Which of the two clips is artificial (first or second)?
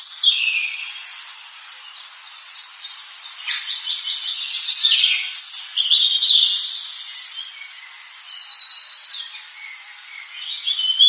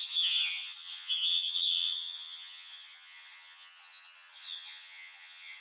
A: second